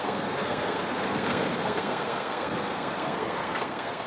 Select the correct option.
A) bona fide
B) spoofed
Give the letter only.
B